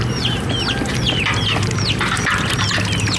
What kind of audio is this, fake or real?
real